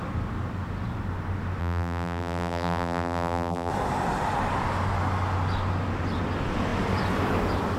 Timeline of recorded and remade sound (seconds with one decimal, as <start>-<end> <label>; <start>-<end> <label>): 0.0-1.6 recorded; 1.6-3.7 remade; 3.7-7.8 recorded